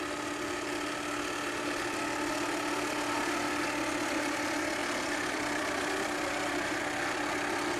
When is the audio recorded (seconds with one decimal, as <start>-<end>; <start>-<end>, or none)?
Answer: 0.0-4.8; 6.8-7.8